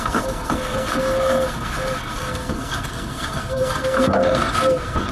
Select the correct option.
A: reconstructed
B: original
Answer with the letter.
A